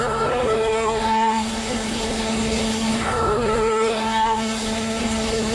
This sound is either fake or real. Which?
fake